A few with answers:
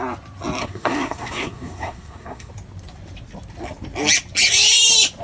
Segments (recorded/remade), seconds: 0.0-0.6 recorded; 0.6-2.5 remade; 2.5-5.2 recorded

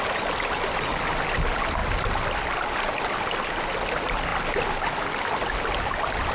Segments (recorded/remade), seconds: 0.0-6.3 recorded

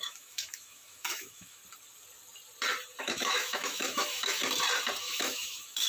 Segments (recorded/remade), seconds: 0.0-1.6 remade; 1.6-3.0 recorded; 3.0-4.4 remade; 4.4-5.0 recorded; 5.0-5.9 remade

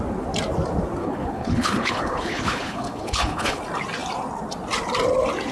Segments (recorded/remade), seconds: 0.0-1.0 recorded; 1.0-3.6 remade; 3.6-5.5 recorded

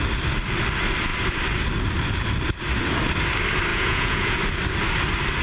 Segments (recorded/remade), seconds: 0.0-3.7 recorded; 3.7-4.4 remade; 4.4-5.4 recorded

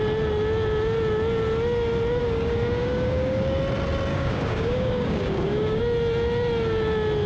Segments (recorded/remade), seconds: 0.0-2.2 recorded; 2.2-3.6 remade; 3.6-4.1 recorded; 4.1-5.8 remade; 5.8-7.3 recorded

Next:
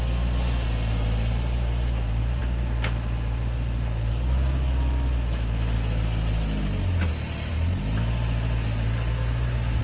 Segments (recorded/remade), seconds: 0.0-9.8 recorded